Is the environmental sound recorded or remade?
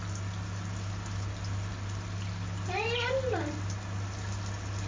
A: recorded